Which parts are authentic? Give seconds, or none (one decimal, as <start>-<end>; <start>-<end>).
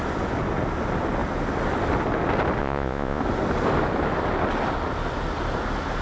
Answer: 0.0-2.6; 3.2-6.0